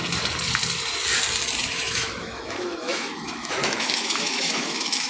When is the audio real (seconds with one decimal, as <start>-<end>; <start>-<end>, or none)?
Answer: 0.0-1.6